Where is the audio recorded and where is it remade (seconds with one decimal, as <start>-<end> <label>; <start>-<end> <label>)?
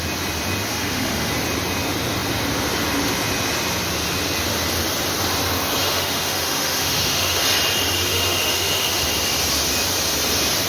0.0-0.7 recorded; 0.7-1.3 remade; 1.3-5.8 recorded; 5.8-7.4 remade; 7.4-8.1 recorded; 8.1-9.0 remade; 9.0-10.7 recorded